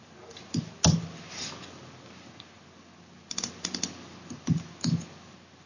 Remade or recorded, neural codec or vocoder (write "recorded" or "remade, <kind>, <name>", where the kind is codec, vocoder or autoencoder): recorded